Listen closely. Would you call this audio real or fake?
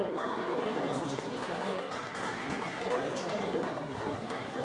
fake